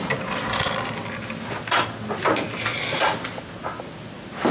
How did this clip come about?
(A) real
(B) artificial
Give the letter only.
A